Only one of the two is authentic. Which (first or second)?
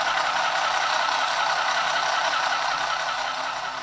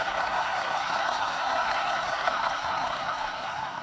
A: first